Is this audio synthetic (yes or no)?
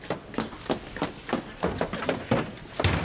no